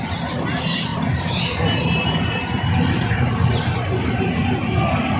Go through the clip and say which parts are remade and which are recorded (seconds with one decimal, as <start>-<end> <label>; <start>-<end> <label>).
0.0-0.9 recorded; 0.9-3.5 remade; 3.5-5.2 recorded